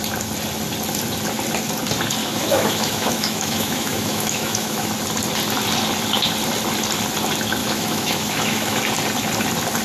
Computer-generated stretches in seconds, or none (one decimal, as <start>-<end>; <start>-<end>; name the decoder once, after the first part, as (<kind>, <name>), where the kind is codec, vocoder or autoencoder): 2.2-4.9 (autoencoder, DAC-VAE); 7.6-8.8